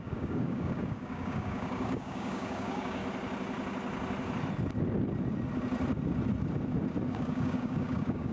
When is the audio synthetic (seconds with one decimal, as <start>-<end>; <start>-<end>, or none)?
0.0-3.0; 7.1-8.3